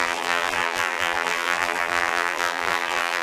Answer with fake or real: fake